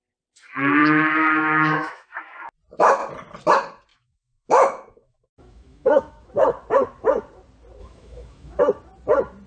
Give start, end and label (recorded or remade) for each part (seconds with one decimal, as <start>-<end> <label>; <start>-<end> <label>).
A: 0.0-0.8 recorded; 0.8-2.2 remade; 2.2-3.9 recorded; 3.9-6.3 remade; 6.3-7.8 recorded; 7.8-8.6 remade; 8.6-9.5 recorded